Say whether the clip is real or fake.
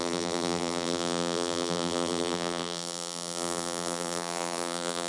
fake